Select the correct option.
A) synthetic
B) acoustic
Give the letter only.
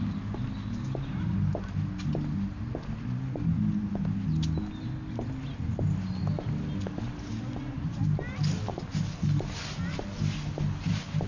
B